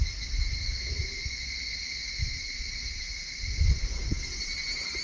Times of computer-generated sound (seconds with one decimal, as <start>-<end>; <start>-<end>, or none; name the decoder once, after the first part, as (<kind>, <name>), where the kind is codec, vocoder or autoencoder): none